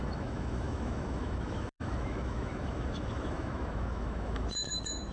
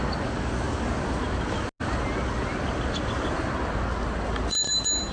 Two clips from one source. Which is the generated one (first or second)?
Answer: first